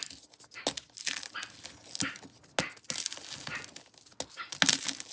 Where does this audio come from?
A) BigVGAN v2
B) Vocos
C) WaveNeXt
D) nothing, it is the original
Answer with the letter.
D